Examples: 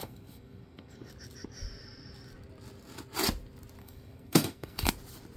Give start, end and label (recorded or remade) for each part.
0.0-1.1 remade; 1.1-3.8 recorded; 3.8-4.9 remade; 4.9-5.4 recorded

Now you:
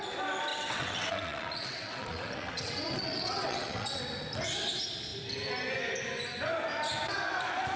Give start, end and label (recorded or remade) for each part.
0.0-0.5 recorded; 0.5-4.0 remade; 4.0-7.8 recorded

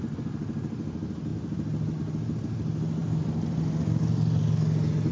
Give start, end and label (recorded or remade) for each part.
0.0-5.1 recorded

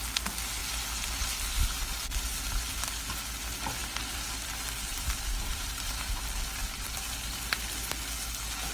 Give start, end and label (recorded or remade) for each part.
0.0-3.8 recorded; 3.8-4.5 remade; 4.5-4.9 recorded; 4.9-5.7 remade; 5.7-6.6 recorded; 6.6-7.2 remade; 7.2-8.7 recorded

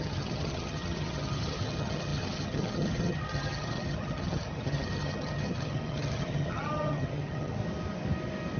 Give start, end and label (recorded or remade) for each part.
0.0-7.6 remade; 7.6-8.6 recorded

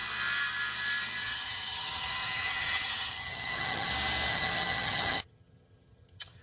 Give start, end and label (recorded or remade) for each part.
0.0-1.2 recorded; 1.2-3.9 remade; 3.9-4.3 recorded; 4.3-6.4 remade

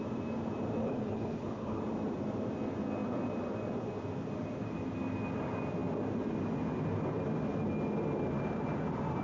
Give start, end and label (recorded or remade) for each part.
0.0-0.8 recorded; 0.8-1.8 remade; 1.8-9.2 recorded